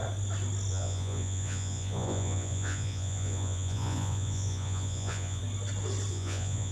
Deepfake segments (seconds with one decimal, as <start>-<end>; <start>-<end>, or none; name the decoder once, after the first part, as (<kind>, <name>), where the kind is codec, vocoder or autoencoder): 0.7-5.4 (vocoder, Vocos); 6.1-6.7